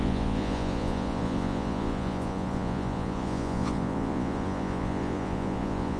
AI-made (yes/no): yes